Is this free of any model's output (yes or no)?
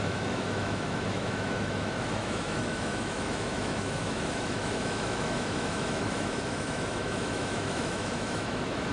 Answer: no